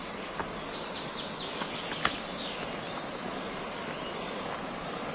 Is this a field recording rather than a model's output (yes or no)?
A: yes